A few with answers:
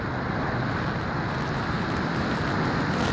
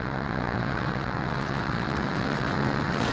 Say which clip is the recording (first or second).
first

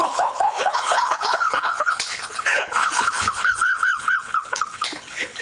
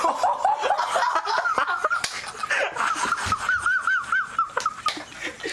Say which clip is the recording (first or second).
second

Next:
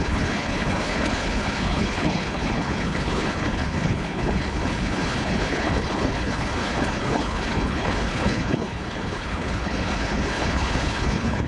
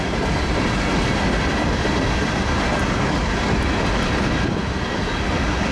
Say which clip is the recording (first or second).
second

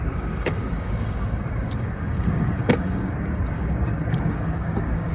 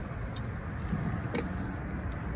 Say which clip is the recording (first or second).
second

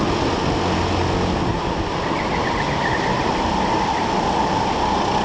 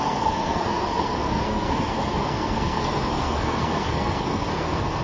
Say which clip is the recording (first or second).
first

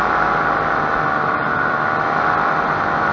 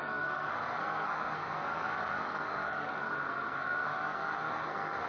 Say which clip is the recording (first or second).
first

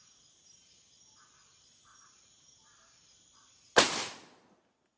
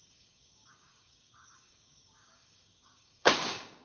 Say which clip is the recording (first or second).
first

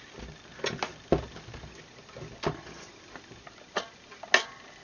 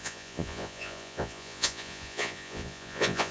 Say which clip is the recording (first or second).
first